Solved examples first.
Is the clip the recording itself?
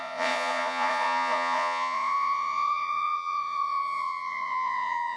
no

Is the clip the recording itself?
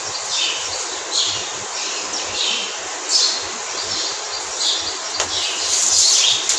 yes